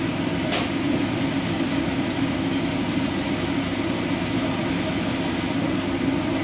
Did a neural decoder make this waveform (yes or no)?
no